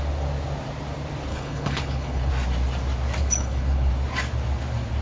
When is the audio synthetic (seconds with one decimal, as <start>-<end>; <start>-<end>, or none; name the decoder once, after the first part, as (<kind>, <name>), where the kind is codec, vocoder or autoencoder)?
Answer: 1.3-2.3 (codec, HILCodec); 3.2-3.9